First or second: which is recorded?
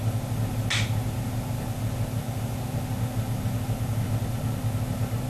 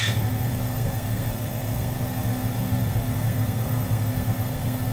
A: first